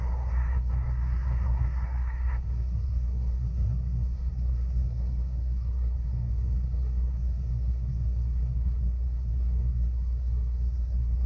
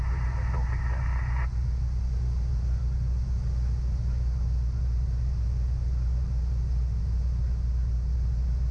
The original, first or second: second